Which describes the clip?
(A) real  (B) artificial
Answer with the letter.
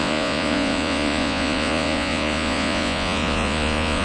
B